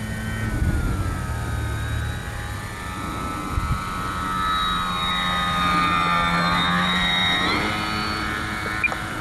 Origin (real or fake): real